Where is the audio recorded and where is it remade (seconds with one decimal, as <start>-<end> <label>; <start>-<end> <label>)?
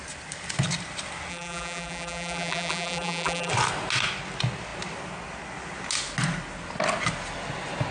0.0-1.3 recorded; 1.3-3.5 remade; 3.5-7.9 recorded